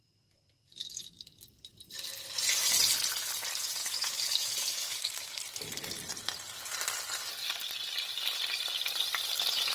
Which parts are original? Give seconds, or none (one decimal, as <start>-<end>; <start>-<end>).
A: 0.0-0.8; 1.5-3.8; 5.4-9.7